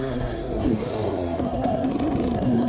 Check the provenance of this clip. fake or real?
fake